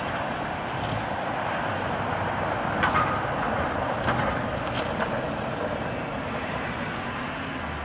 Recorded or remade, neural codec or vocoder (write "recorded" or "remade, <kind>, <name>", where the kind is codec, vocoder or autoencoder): recorded